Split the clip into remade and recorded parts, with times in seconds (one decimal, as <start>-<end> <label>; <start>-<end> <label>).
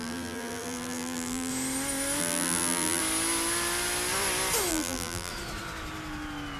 0.0-1.5 remade; 1.5-2.2 recorded; 2.2-3.0 remade; 3.0-4.7 recorded; 4.7-5.3 remade; 5.3-6.6 recorded